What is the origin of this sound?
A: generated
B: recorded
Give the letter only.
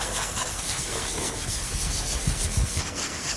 A